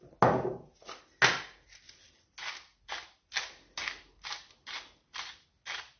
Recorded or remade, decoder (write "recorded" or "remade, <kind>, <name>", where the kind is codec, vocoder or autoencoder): recorded